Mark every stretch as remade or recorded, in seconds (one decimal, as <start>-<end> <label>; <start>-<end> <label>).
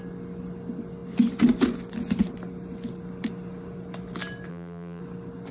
0.0-4.5 recorded; 4.5-5.0 remade; 5.0-5.5 recorded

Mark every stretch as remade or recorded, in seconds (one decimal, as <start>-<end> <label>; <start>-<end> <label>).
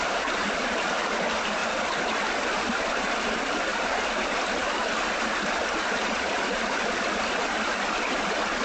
0.0-8.6 remade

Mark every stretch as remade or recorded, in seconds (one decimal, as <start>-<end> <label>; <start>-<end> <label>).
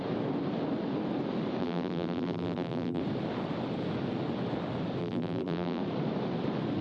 0.0-1.6 recorded; 1.6-3.0 remade; 3.0-5.0 recorded; 5.0-5.8 remade; 5.8-6.8 recorded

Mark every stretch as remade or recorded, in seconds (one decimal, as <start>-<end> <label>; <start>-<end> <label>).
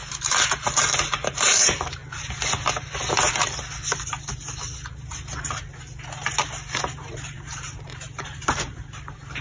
0.0-2.0 remade; 2.0-6.8 recorded; 6.8-9.4 remade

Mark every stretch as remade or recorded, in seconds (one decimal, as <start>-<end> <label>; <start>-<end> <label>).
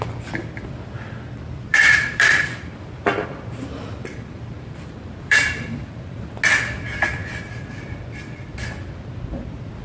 0.0-1.7 recorded; 1.7-6.3 remade; 6.3-9.8 recorded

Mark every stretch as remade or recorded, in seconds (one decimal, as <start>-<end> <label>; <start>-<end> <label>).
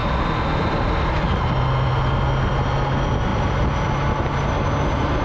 0.0-3.3 recorded; 3.3-3.9 remade; 3.9-5.2 recorded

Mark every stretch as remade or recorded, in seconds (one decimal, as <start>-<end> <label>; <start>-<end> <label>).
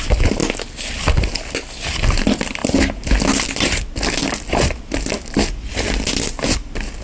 0.0-7.0 recorded